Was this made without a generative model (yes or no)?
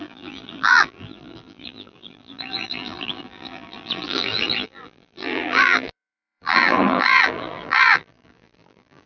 no